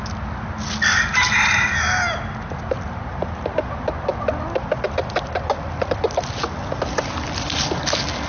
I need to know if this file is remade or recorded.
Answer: recorded